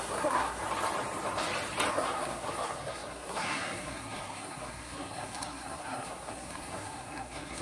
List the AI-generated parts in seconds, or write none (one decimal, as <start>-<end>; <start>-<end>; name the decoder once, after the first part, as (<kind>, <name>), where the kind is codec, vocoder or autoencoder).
0.0-0.6 (codec, SNAC); 1.9-7.6